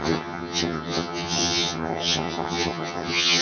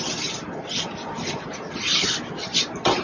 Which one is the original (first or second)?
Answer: second